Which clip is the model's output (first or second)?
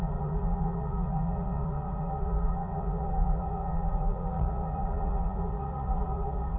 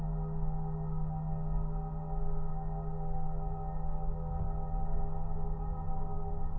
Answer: first